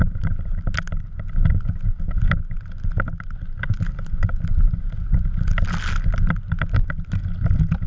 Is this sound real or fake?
real